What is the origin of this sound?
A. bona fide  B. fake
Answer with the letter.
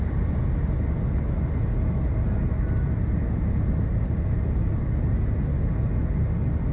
A